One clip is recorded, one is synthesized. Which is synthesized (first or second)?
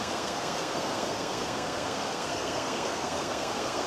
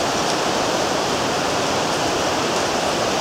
first